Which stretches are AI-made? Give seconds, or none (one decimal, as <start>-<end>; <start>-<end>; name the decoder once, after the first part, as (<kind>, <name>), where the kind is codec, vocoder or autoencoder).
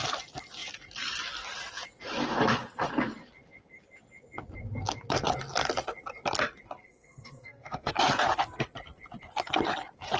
6.8-7.9 (codec, SNAC)